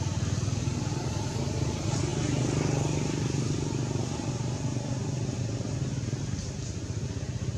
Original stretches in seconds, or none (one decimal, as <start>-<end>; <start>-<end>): 0.0-7.6